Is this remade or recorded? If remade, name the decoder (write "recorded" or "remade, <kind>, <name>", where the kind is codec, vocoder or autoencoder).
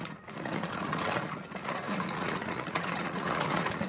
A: remade, vocoder, Vocos